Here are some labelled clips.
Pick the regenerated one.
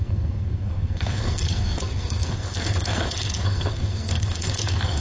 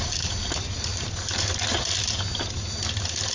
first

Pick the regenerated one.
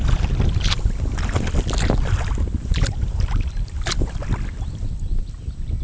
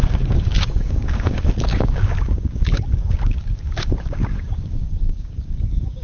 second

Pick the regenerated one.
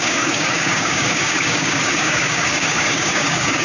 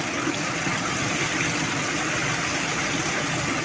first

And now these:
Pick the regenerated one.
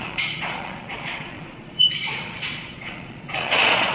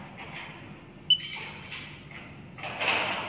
first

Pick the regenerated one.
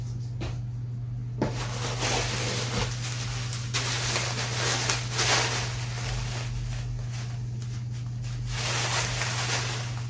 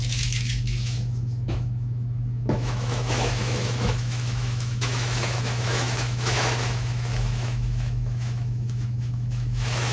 second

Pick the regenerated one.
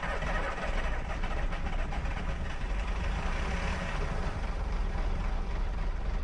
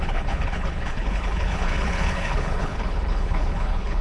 second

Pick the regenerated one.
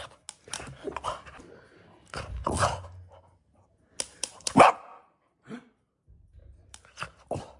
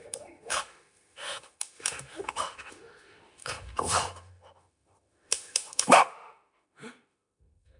second